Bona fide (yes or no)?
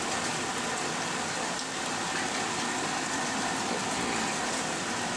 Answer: yes